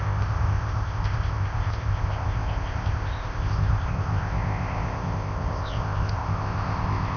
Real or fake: fake